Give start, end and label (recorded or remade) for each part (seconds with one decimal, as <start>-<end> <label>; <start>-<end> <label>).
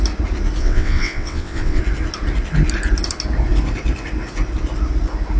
0.0-0.6 recorded; 0.6-1.8 remade; 1.8-5.4 recorded